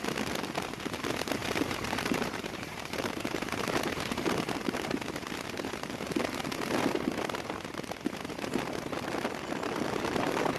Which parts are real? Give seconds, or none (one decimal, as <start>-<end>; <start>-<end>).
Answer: 0.0-1.4; 5.7-10.6